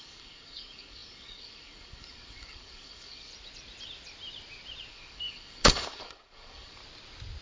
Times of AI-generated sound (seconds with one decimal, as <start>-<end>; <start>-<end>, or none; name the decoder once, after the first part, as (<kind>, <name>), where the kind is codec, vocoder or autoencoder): 0.0-3.3 (codec, DAC); 4.9-6.8